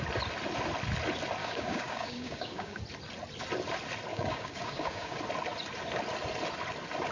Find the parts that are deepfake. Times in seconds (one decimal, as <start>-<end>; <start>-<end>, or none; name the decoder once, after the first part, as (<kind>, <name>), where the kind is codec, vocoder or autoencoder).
1.4-2.8 (codec, DAC); 4.1-5.2